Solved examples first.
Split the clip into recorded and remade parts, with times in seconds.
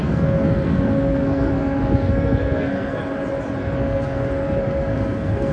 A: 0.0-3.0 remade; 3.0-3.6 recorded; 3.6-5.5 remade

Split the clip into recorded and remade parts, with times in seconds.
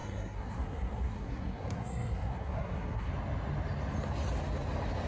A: 0.0-3.1 remade; 3.1-5.1 recorded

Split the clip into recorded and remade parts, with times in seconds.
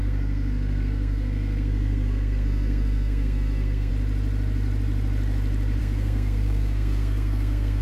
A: 0.0-3.9 remade; 3.9-5.8 recorded; 5.8-7.8 remade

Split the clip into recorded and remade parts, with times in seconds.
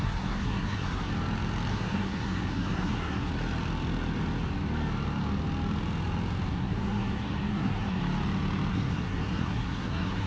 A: 0.0-1.1 remade; 1.1-1.7 recorded; 1.7-3.3 remade; 3.3-6.5 recorded; 6.5-8.0 remade; 8.0-8.7 recorded; 8.7-10.3 remade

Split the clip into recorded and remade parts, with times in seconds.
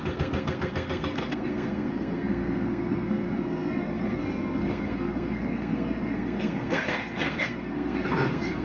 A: 0.0-8.6 remade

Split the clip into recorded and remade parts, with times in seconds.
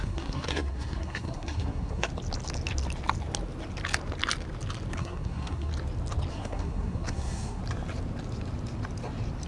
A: 0.0-2.1 remade; 2.1-4.9 recorded; 4.9-5.7 remade; 5.7-6.3 recorded; 6.3-7.6 remade; 7.6-9.5 recorded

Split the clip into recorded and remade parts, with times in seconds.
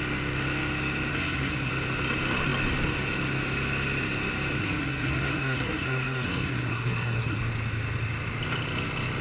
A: 0.0-1.1 recorded; 1.1-1.7 remade; 1.7-4.6 recorded; 4.6-7.4 remade; 7.4-9.2 recorded